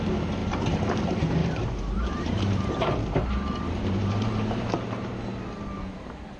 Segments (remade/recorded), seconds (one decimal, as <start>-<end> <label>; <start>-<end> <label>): 0.0-0.4 recorded; 0.4-0.9 remade; 0.9-1.4 recorded; 1.4-5.2 remade; 5.2-6.4 recorded

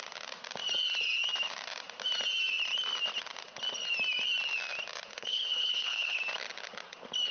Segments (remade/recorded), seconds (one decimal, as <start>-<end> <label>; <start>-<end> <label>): 0.0-5.1 recorded; 5.1-6.2 remade; 6.2-7.3 recorded

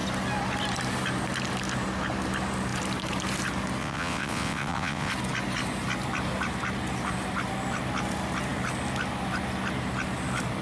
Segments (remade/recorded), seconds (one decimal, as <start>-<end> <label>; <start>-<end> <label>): 0.0-3.8 recorded; 3.8-5.1 remade; 5.1-10.6 recorded

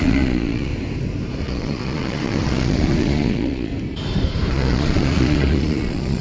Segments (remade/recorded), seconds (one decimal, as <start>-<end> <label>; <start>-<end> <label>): 0.0-0.7 remade; 0.7-1.4 recorded; 1.4-3.7 remade; 3.7-4.5 recorded; 4.5-6.2 remade

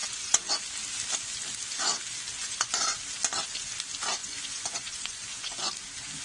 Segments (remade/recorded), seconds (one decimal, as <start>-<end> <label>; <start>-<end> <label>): 0.0-0.6 remade; 0.6-2.4 recorded; 2.4-3.0 remade; 3.0-4.2 recorded; 4.2-5.7 remade; 5.7-6.2 recorded

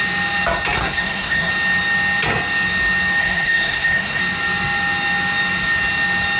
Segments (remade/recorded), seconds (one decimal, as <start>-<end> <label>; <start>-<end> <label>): 0.0-0.8 recorded; 0.8-1.5 remade; 1.5-3.2 recorded; 3.2-4.2 remade; 4.2-6.4 recorded

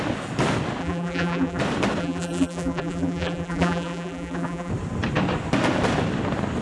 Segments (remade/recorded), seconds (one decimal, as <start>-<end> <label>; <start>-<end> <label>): 0.0-0.8 recorded; 0.8-1.6 remade; 1.6-2.0 recorded; 2.0-4.7 remade; 4.7-6.6 recorded

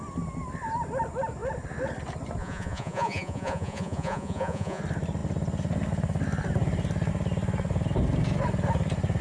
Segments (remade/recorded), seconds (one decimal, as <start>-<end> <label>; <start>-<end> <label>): 0.0-2.4 recorded; 2.4-4.8 remade; 4.8-9.2 recorded